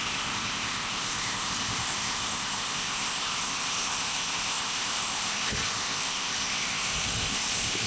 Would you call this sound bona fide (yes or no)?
no